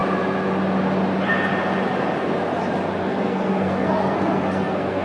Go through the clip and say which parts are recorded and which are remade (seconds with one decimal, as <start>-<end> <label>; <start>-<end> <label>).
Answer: 0.0-3.0 recorded; 3.0-5.0 remade